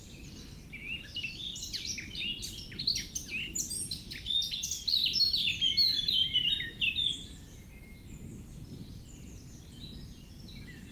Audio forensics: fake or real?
real